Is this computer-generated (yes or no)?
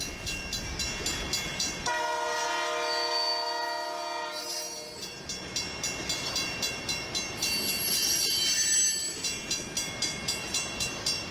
no